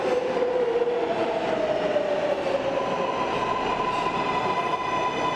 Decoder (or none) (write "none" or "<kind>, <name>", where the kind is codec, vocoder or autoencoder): none